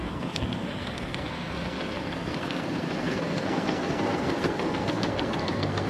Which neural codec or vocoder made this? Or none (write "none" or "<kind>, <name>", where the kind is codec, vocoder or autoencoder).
codec, SNAC